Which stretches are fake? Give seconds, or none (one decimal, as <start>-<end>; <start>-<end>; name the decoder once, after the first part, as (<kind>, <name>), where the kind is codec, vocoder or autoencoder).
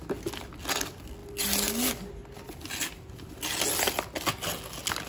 none